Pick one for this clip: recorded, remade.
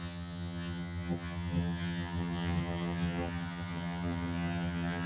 remade